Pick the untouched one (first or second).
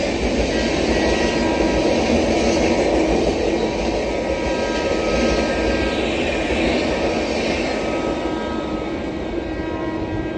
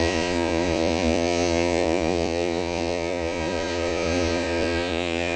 first